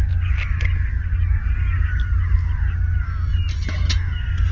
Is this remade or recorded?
recorded